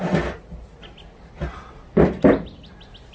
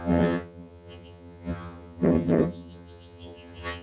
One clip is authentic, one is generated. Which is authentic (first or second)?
first